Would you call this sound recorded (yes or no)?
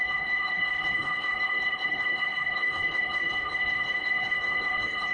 no